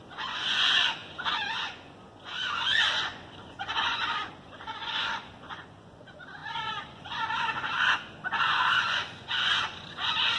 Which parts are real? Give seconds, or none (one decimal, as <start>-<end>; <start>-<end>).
none